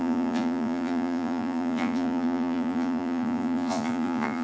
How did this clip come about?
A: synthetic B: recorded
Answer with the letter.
A